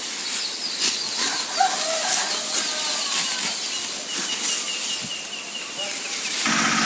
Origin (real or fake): real